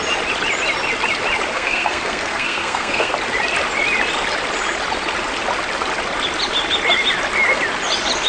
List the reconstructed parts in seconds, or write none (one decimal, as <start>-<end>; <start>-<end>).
1.5-3.1